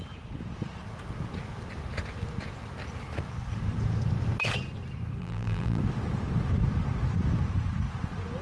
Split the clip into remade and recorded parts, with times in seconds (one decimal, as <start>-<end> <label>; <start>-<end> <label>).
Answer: 0.0-5.2 recorded; 5.2-5.8 remade; 5.8-8.4 recorded